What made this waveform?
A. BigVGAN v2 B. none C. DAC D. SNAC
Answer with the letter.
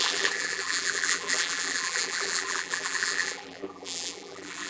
A